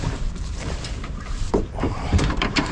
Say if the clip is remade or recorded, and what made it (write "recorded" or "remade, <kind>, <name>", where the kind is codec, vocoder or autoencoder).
remade, vocoder, BigVGAN v2